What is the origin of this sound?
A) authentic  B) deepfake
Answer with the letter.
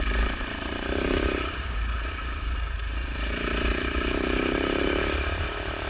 B